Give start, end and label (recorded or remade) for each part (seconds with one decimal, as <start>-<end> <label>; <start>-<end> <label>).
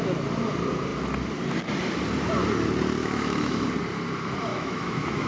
0.0-3.0 recorded; 3.0-3.6 remade; 3.6-4.5 recorded; 4.5-5.3 remade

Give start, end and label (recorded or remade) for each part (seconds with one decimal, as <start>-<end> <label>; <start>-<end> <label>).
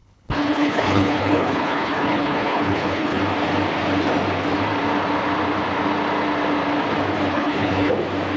0.0-3.2 remade; 3.2-7.3 recorded; 7.3-7.9 remade; 7.9-8.4 recorded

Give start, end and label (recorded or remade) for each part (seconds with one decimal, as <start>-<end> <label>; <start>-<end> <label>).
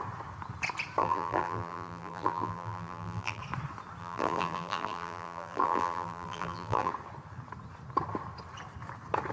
0.0-1.0 recorded; 1.0-3.4 remade; 3.4-4.0 recorded; 4.0-6.9 remade; 6.9-9.3 recorded